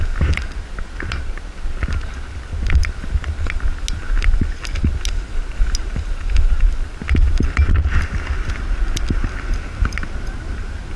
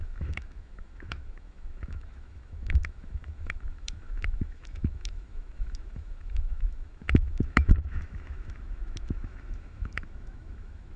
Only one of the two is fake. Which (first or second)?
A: second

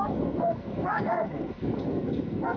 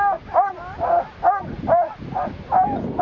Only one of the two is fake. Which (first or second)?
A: first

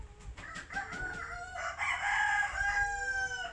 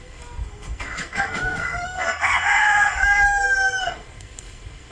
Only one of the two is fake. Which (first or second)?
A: second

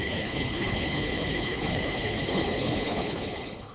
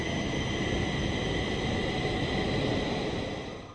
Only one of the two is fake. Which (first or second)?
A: first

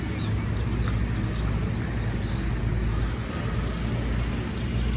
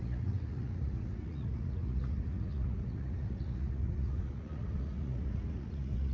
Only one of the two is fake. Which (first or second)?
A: second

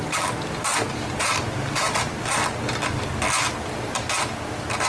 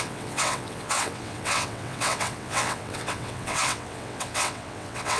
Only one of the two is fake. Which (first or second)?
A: second